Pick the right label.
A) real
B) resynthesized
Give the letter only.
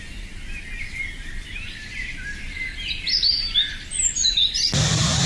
A